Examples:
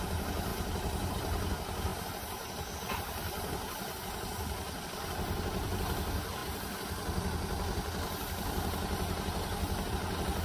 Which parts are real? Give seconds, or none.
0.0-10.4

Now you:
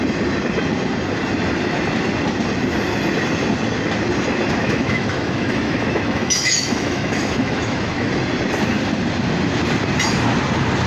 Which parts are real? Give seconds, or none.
0.0-4.6; 8.1-10.9

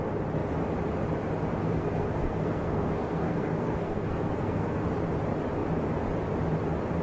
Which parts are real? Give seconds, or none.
0.0-1.6; 4.8-7.0

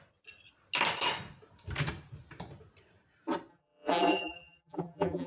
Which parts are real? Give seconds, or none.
0.0-3.5

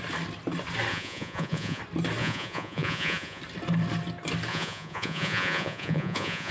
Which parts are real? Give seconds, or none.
0.0-0.9; 1.8-2.2; 3.4-4.5